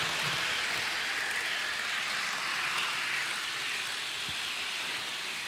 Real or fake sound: real